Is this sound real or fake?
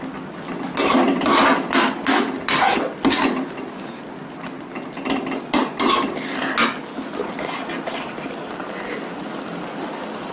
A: real